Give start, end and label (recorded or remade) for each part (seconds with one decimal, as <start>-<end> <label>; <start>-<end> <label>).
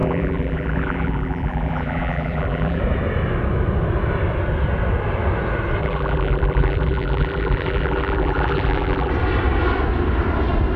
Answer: 0.0-2.8 remade; 2.8-5.8 recorded; 5.8-9.1 remade; 9.1-10.8 recorded